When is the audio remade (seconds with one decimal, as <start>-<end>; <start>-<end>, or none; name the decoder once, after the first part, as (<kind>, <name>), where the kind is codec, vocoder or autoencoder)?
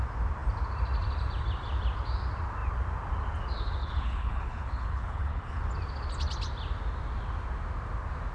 3.8-5.6 (codec, HILCodec)